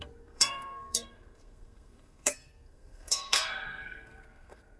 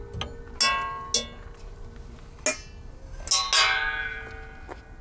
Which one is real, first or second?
second